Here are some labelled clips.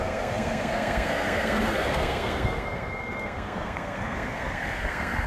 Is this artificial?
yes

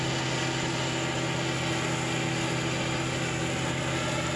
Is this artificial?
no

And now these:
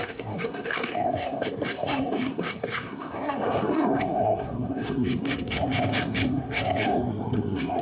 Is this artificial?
yes